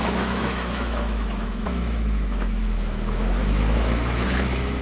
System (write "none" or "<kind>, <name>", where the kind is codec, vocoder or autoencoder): autoencoder, DAC-VAE